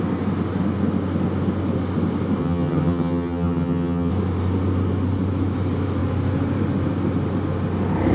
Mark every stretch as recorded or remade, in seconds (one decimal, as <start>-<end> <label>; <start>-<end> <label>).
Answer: 0.0-2.4 recorded; 2.4-4.1 remade; 4.1-8.1 recorded